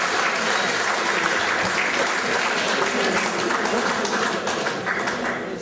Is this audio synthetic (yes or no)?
no